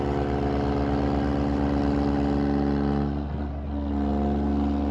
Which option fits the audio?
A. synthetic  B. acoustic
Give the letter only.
B